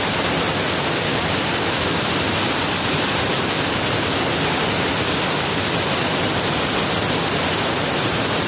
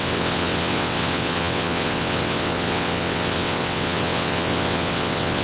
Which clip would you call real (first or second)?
first